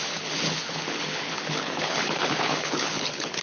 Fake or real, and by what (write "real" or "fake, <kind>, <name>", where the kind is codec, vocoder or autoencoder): fake, codec, HILCodec